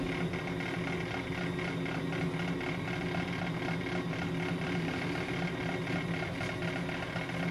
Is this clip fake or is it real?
real